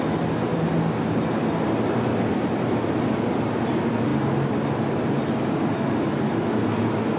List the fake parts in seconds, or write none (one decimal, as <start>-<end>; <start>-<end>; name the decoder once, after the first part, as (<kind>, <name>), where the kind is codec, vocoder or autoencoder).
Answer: none

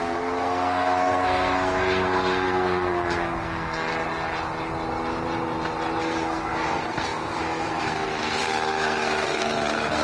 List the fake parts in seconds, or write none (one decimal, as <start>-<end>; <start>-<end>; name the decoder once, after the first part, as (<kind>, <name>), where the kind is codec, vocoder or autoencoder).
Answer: 0.0-3.9 (codec, SNAC); 6.0-10.0

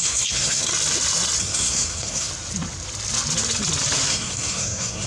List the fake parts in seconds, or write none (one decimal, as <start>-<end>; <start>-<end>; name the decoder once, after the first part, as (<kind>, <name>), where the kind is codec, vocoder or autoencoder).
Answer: 0.0-0.7 (codec, SNAC); 1.4-2.3; 4.1-5.1

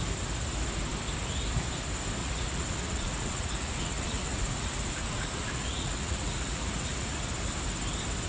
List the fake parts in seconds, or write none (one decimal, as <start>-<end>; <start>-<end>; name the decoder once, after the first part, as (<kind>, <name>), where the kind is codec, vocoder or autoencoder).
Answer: 2.2-7.2 (vocoder, Vocos)

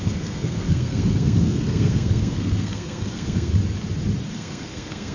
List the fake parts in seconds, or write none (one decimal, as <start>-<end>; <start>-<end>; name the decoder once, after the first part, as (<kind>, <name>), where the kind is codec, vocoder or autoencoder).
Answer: 0.0-3.5 (codec, SNAC); 4.3-5.1

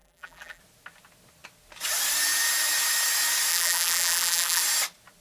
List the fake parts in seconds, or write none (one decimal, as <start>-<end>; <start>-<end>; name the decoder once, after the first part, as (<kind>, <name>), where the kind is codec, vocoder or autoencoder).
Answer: 0.0-0.6 (vocoder, BigVGAN v2); 3.5-4.6

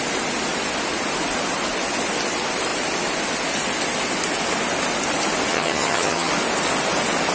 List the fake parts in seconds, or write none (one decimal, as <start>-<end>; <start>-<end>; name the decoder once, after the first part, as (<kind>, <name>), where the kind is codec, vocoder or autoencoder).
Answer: 5.5-6.3 (vocoder, HiFi-GAN)

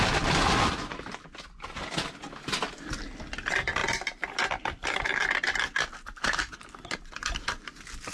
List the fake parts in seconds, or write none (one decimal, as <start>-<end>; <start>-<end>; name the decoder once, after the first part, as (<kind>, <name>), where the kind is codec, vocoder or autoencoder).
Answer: none